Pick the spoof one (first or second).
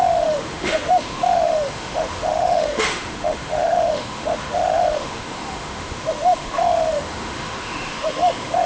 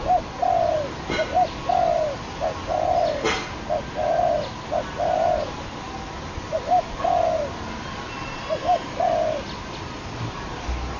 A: first